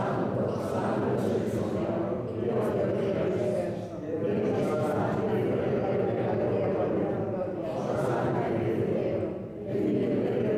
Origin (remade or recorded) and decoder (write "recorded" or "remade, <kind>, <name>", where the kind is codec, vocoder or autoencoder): remade, vocoder, BigVGAN v2